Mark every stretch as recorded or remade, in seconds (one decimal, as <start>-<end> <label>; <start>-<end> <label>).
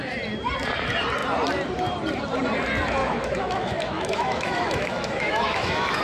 0.0-3.0 recorded; 3.0-6.0 remade